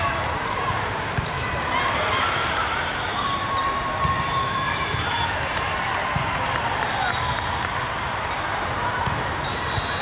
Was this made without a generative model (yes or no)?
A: no